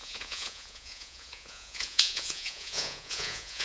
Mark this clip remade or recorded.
remade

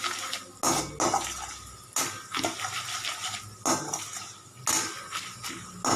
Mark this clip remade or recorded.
recorded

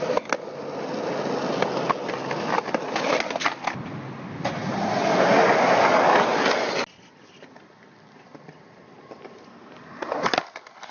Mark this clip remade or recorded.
recorded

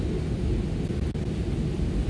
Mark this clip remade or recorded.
recorded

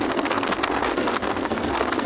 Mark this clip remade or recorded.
remade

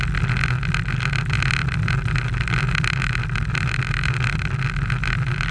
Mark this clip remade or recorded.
recorded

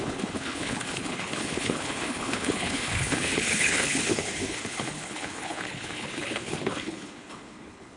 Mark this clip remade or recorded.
remade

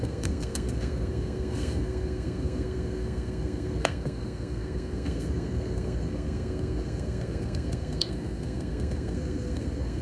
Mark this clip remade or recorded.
remade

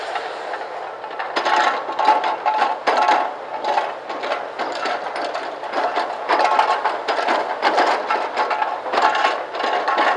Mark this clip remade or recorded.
recorded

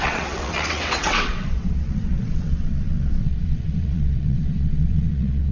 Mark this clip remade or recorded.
remade